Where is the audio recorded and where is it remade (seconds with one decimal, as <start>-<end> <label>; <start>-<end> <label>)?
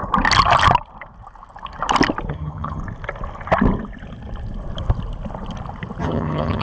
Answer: 0.0-2.3 recorded; 2.3-2.8 remade; 2.8-6.0 recorded; 6.0-6.6 remade